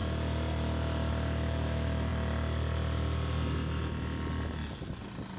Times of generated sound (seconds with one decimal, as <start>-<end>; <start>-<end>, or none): none